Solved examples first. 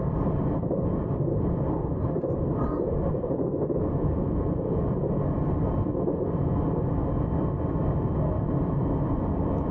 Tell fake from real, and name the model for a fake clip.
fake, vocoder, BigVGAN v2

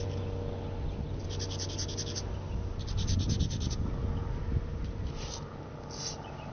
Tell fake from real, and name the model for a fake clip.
real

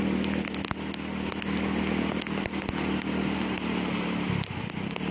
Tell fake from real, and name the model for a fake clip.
real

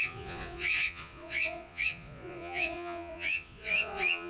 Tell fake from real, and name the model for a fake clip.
fake, vocoder, Vocos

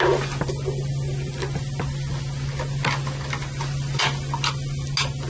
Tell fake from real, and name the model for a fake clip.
real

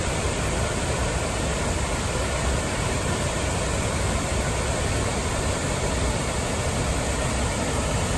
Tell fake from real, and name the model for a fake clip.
real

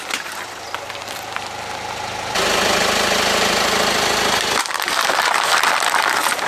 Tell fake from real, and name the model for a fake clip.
fake, vocoder, BigVGAN v2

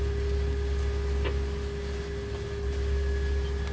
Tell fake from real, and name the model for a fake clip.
real